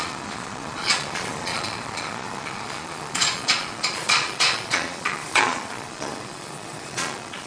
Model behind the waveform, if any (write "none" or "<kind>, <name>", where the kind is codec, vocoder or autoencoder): vocoder, Vocos